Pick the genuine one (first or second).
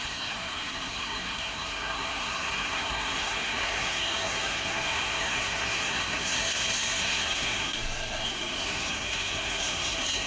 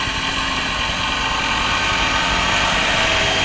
second